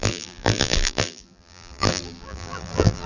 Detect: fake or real fake